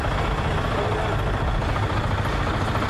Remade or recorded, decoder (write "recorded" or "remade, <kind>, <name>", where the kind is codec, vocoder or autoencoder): recorded